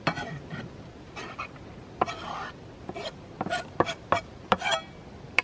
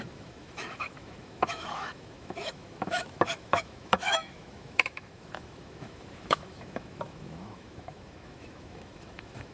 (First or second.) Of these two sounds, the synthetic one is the second